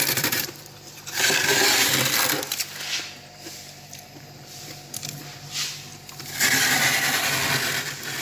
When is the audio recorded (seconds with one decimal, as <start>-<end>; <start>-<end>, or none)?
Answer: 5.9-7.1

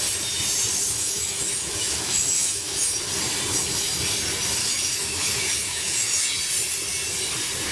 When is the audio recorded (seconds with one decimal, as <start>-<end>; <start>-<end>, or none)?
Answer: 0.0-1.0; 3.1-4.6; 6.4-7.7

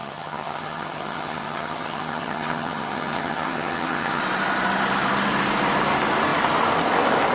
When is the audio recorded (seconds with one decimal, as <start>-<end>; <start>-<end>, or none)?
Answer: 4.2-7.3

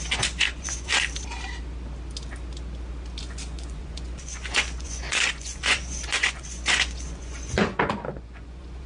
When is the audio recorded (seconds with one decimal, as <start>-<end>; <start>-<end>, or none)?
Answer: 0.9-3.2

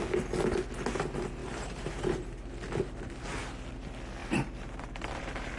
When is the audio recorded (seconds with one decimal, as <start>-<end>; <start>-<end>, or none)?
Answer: 0.0-1.4; 2.5-4.2

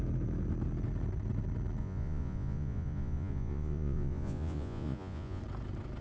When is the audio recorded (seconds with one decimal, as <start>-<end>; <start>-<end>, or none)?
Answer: 0.0-1.8; 5.4-6.0